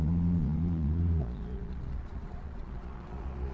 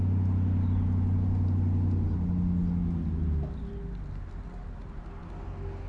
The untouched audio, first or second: second